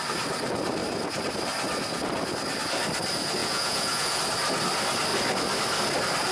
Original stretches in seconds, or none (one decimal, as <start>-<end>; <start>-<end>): 0.0-3.4; 4.2-6.3